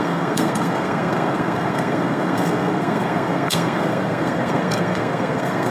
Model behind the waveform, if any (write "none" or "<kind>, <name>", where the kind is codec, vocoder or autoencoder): codec, SNAC